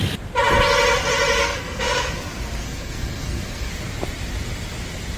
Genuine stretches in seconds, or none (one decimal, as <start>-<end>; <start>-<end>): 0.0-1.4; 2.1-2.6; 3.7-5.2